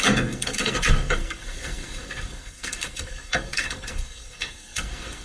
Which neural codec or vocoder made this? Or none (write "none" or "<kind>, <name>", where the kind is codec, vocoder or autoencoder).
codec, SNAC